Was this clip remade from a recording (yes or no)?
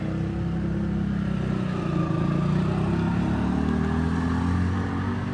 no